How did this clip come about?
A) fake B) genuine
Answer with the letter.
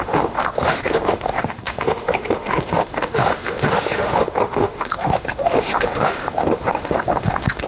A